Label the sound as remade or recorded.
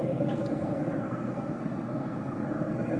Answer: remade